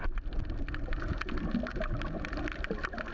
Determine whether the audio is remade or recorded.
recorded